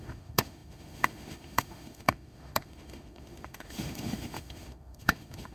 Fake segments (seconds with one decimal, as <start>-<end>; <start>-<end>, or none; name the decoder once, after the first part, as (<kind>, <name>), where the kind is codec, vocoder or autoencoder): 0.0-5.5 (autoencoder, DAC-VAE)